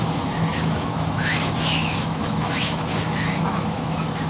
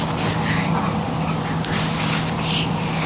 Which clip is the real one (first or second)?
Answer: second